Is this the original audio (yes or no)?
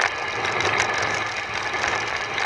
yes